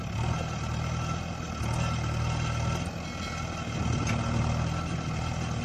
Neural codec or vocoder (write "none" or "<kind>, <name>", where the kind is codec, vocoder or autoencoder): none